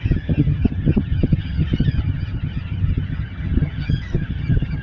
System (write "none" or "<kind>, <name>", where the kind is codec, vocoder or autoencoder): vocoder, HiFi-GAN